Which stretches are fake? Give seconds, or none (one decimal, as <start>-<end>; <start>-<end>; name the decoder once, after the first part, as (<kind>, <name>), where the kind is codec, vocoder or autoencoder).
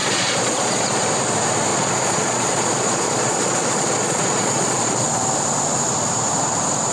0.0-0.9 (vocoder, Vocos); 1.7-5.0